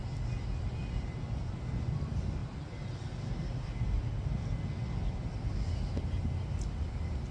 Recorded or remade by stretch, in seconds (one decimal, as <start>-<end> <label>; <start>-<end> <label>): 0.0-7.3 recorded